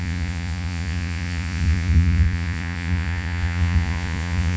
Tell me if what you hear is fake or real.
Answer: fake